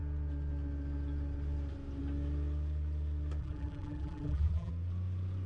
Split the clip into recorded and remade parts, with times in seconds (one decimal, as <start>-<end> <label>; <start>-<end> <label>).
0.0-3.4 recorded; 3.4-4.7 remade; 4.7-5.5 recorded